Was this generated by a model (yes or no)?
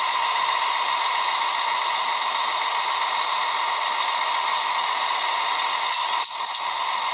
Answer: no